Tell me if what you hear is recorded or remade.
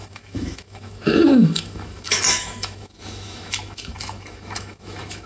remade